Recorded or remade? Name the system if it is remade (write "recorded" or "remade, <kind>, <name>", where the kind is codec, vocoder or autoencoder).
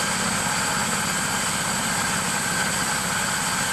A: recorded